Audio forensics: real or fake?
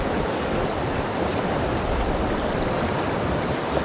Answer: real